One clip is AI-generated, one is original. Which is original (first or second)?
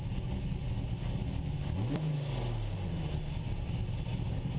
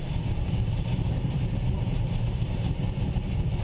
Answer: first